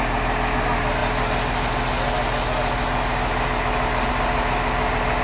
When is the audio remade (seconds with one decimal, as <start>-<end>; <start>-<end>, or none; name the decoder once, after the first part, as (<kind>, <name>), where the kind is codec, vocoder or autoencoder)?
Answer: none